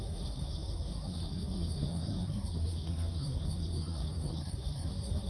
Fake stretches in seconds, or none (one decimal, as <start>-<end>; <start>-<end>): 0.0-5.3